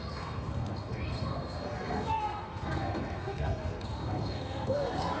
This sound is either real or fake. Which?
fake